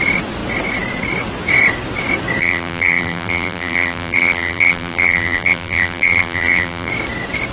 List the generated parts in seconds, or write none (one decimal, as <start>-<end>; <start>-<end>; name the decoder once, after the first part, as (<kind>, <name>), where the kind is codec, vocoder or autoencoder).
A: 2.4-6.9 (vocoder, BigVGAN v2)